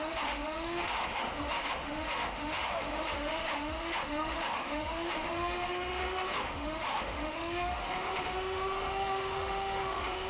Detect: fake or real fake